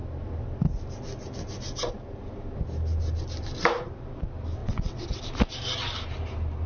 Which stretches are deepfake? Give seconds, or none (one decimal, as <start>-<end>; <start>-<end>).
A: 4.6-5.2